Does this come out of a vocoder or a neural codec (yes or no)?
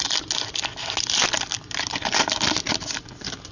no